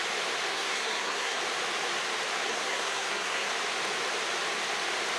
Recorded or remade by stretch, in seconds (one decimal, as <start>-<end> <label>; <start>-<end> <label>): 0.0-0.5 recorded; 0.5-1.4 remade; 1.4-2.5 recorded; 2.5-3.5 remade; 3.5-5.2 recorded